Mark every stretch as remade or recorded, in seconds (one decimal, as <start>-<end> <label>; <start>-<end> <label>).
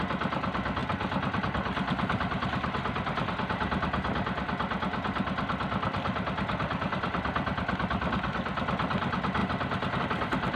0.0-10.6 recorded